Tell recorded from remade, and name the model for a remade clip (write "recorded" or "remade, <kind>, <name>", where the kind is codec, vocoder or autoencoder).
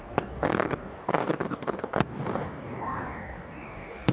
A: remade, codec, DAC